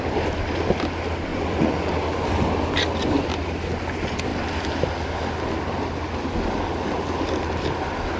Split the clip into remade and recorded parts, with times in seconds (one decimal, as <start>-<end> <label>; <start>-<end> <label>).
0.0-1.3 recorded; 1.3-1.9 remade; 1.9-8.2 recorded